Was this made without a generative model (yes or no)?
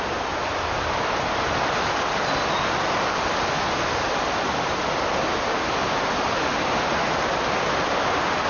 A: yes